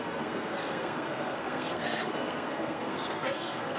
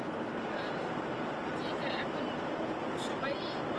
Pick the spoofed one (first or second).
first